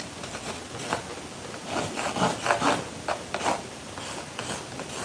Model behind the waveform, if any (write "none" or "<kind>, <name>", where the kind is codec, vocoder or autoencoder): none